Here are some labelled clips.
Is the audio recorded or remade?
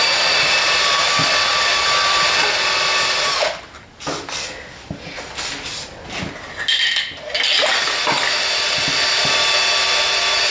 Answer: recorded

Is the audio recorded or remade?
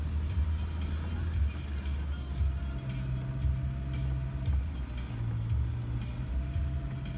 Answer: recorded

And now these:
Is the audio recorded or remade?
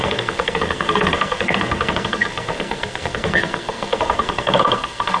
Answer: remade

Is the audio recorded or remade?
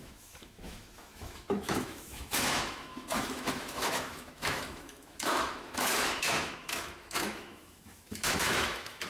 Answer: remade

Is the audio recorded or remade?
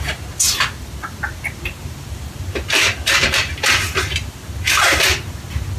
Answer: recorded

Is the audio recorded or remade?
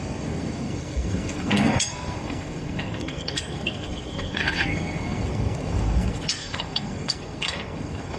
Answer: remade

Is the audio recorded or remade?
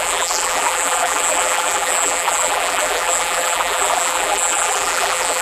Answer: remade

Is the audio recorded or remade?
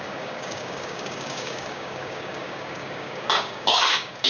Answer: remade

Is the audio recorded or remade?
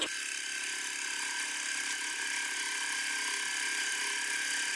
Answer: recorded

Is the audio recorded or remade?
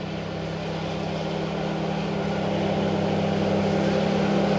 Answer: recorded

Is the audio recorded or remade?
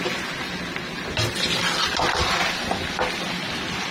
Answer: recorded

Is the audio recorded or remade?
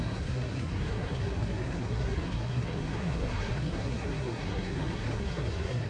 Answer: remade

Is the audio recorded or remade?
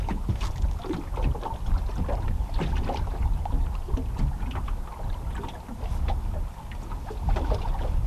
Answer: recorded